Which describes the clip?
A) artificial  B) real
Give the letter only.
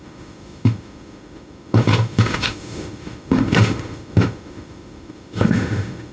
A